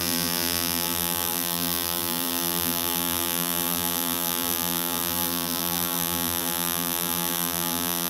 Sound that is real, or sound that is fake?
fake